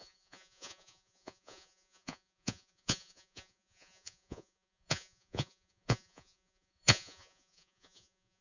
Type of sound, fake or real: fake